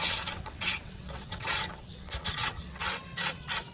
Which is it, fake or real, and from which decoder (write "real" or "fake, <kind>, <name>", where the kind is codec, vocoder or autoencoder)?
fake, vocoder, WaveNeXt